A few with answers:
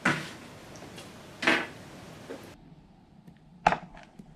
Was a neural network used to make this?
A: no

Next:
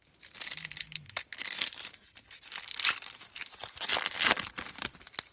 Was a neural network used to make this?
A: no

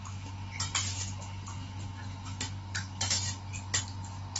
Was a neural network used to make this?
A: no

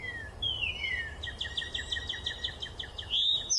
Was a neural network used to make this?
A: no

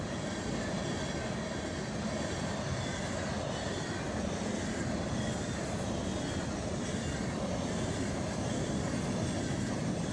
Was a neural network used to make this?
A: no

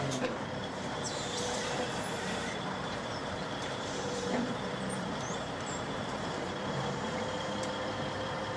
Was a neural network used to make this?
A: yes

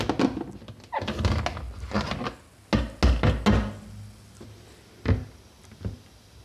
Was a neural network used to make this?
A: no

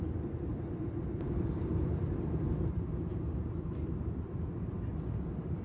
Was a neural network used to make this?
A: yes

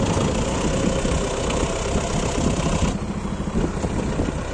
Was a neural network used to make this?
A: no